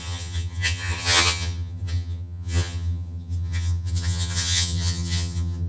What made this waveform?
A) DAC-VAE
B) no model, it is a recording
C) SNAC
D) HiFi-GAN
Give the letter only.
D